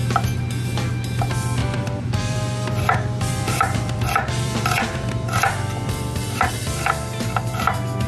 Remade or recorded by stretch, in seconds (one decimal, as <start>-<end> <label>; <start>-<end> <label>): 0.0-1.6 recorded; 1.6-6.5 remade; 6.5-8.1 recorded